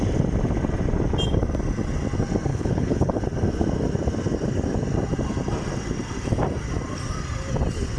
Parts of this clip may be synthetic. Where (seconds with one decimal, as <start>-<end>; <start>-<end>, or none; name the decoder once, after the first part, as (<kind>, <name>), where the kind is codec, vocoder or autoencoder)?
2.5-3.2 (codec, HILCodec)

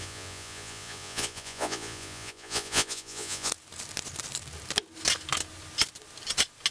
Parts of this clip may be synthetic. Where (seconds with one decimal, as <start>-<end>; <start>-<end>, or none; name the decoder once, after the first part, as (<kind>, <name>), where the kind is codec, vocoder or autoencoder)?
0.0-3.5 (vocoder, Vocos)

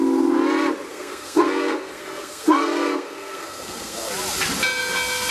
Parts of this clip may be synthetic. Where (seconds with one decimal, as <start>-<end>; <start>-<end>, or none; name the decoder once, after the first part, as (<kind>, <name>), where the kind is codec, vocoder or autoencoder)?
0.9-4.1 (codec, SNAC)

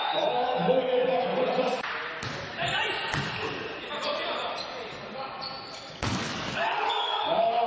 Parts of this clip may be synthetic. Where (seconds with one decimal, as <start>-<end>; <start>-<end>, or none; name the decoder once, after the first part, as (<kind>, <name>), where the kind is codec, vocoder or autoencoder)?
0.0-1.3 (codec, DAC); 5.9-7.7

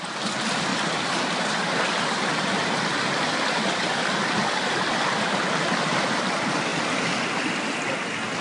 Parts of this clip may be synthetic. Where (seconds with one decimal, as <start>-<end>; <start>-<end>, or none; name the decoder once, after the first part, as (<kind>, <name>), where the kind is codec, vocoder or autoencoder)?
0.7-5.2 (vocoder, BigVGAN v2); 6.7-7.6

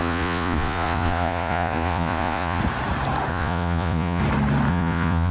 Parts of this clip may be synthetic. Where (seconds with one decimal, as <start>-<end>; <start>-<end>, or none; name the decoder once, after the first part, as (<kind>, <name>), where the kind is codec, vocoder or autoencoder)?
0.0-2.6 (vocoder, Vocos); 3.3-4.2; 4.7-5.3

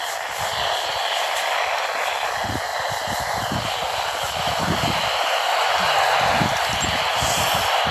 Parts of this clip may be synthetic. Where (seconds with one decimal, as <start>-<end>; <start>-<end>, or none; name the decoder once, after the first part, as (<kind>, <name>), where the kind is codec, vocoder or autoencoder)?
0.0-0.9 (vocoder, BigVGAN v2)

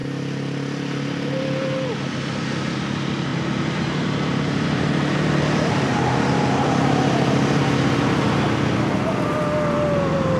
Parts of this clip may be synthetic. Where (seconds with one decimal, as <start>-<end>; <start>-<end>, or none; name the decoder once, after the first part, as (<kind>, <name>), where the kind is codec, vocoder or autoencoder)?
3.3-7.6 (vocoder, BigVGAN v2)